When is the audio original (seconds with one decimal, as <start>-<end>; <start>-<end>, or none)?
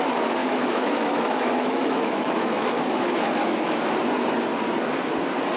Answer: 0.0-0.4; 3.8-5.6